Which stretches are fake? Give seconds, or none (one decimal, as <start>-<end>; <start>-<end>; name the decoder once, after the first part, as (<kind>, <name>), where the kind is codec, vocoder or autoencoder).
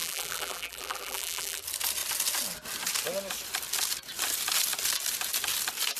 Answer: 0.0-1.6 (vocoder, BigVGAN v2)